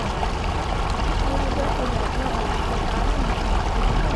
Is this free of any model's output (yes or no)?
yes